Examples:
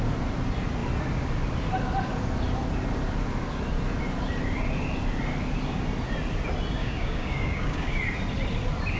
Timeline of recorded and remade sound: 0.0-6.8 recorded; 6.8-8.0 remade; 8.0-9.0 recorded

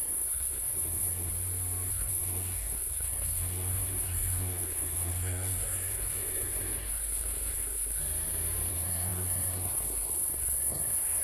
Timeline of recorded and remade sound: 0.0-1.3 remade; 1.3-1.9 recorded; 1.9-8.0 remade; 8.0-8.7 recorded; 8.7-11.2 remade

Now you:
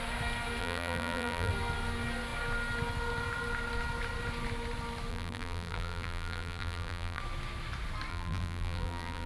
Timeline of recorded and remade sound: 0.0-0.6 recorded; 0.6-1.5 remade; 1.5-5.1 recorded; 5.1-7.2 remade; 7.2-8.1 recorded; 8.1-9.3 remade

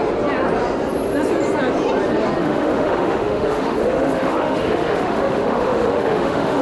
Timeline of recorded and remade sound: 0.0-2.4 recorded; 2.4-6.6 remade

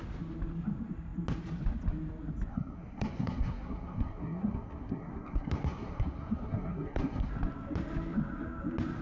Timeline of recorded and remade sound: 0.0-2.5 recorded; 2.5-7.3 remade; 7.3-9.0 recorded

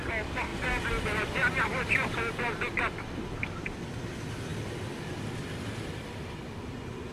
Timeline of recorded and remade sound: 0.0-7.1 recorded